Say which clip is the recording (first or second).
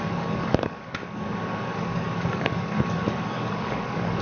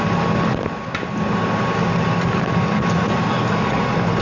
second